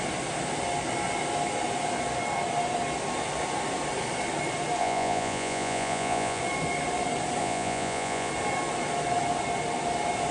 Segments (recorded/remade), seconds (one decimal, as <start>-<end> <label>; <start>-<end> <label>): 0.0-4.8 recorded; 4.8-6.4 remade; 6.4-7.4 recorded; 7.4-8.3 remade; 8.3-10.3 recorded